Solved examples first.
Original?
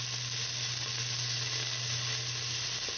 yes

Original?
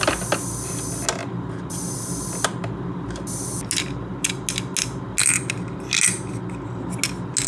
yes